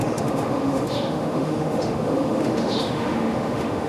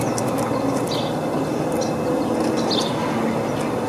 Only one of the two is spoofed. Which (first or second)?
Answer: first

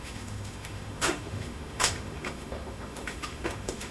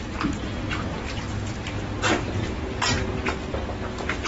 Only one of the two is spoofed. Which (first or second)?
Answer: first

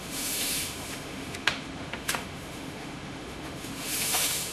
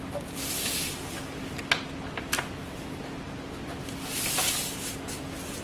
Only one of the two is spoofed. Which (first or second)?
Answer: first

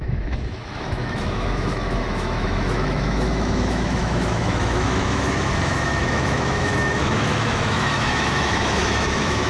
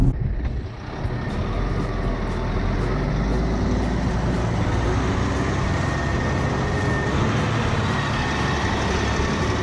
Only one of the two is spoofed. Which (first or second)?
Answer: first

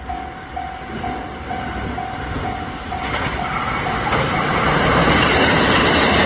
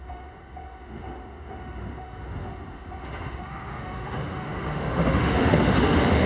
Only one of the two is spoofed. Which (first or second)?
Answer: second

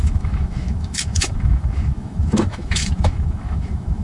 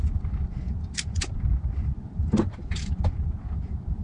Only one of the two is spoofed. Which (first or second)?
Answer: first